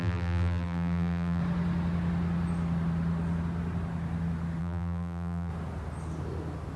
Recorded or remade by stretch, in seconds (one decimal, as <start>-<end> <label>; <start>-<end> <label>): 0.0-1.4 remade; 1.4-4.6 recorded; 4.6-5.5 remade; 5.5-6.8 recorded